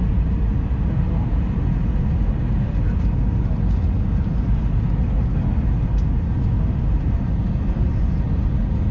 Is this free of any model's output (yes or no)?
yes